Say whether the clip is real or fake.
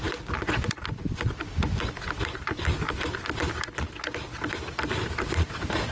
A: real